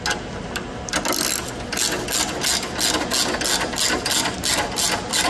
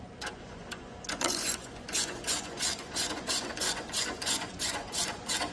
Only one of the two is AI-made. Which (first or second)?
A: second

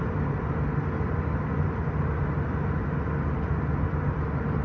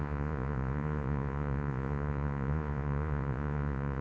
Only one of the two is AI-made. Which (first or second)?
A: second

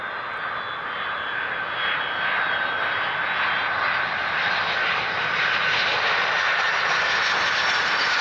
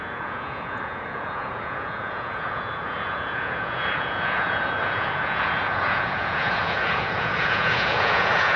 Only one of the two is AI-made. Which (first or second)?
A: second